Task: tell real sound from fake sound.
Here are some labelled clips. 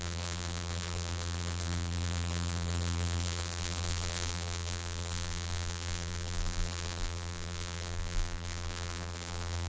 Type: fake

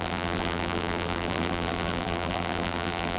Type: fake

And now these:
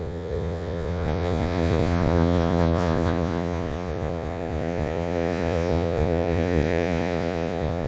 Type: fake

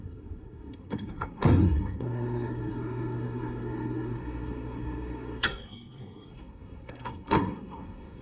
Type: fake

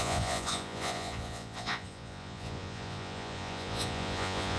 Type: fake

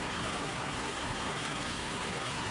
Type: fake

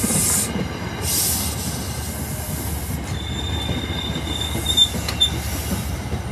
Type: real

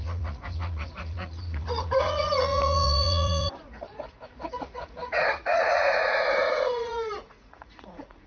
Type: fake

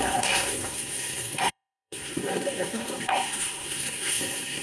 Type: fake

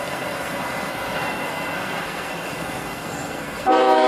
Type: fake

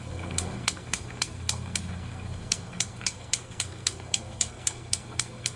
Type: fake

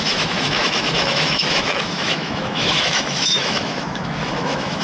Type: fake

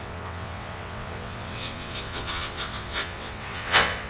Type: fake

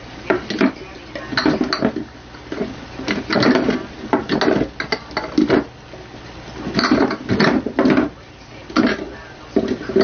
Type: real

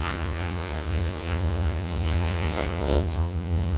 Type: fake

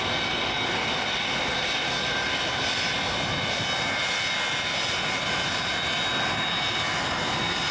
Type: real